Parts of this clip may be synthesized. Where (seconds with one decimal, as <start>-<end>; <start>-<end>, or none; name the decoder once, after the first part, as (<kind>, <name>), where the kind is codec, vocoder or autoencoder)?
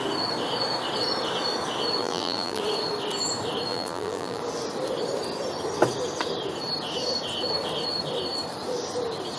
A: 2.0-2.6 (vocoder, BigVGAN v2); 3.7-4.4